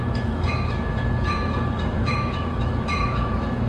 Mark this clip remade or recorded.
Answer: remade